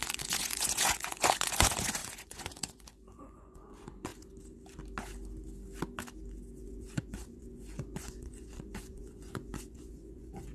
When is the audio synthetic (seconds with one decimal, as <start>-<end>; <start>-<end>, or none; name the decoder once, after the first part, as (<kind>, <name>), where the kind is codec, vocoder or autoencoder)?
0.0-4.1 (vocoder, Vocos); 6.5-10.5